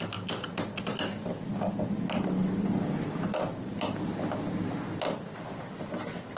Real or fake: real